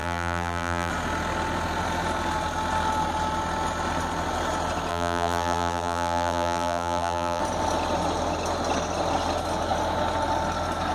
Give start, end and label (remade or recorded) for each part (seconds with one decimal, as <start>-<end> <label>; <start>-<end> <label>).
0.0-0.9 remade; 0.9-4.9 recorded; 4.9-7.4 remade; 7.4-10.9 recorded